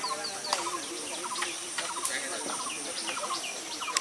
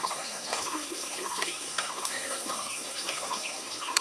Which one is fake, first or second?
second